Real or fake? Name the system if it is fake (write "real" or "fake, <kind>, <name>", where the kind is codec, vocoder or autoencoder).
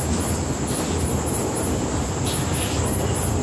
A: real